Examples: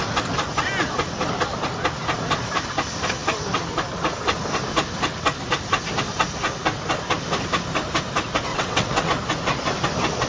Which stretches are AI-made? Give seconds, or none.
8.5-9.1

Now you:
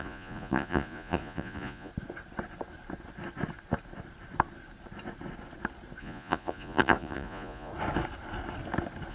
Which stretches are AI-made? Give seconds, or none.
0.0-1.9; 6.0-7.7